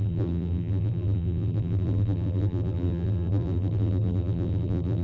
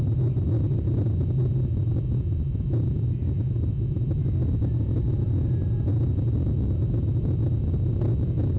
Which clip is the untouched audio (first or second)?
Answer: second